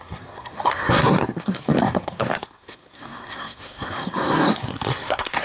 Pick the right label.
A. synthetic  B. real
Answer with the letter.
A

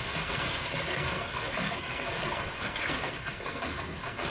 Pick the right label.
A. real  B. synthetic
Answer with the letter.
B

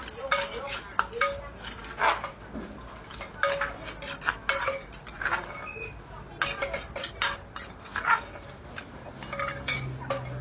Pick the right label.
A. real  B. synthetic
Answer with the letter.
A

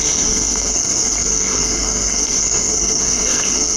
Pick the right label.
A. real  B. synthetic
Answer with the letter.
B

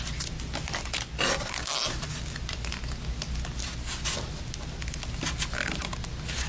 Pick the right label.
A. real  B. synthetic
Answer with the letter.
A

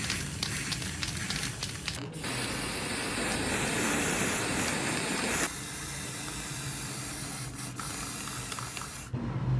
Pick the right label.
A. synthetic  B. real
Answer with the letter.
B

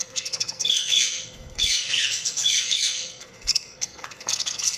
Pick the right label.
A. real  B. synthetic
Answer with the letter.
B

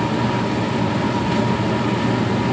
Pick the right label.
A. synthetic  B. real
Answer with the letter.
B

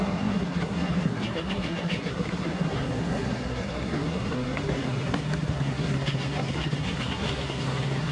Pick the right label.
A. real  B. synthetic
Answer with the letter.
B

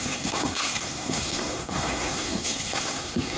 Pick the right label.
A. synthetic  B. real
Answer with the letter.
A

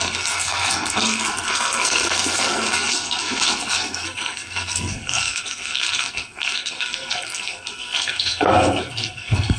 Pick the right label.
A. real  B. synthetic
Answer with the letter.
B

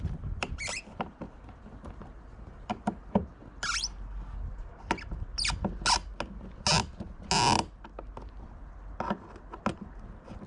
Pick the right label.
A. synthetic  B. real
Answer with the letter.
B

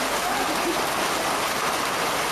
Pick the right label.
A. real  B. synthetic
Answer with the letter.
A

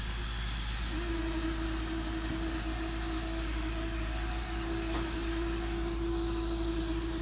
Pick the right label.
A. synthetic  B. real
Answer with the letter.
B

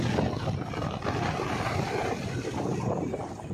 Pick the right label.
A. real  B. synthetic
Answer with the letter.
A